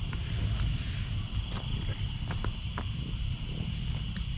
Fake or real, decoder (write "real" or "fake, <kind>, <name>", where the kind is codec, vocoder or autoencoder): real